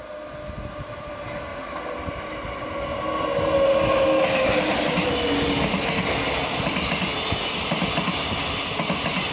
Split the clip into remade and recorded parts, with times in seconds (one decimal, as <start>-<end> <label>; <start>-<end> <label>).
0.0-9.3 recorded